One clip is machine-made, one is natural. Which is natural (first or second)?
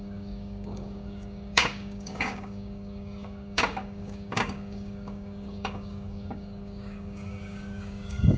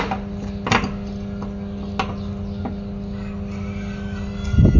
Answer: second